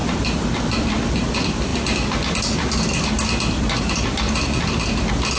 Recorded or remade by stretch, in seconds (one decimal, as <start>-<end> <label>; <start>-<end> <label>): 0.0-5.4 recorded